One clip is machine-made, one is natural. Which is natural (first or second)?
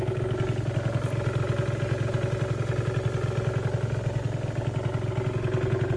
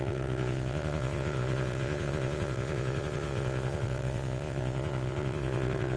first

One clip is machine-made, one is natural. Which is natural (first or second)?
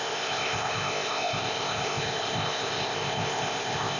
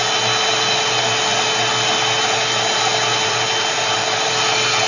second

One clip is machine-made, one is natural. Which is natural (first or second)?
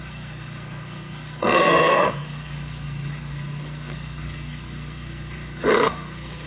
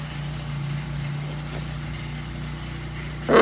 second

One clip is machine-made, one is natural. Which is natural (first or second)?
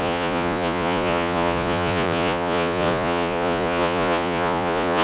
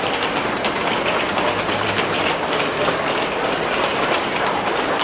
second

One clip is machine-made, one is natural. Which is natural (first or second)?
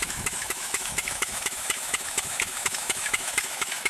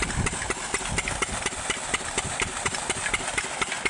second